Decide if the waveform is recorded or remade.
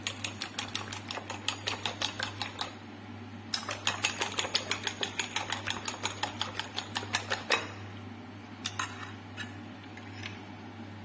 recorded